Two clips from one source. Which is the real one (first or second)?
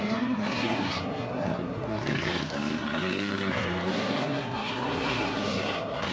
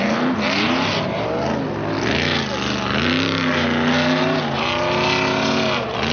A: second